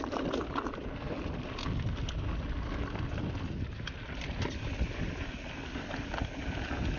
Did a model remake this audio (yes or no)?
no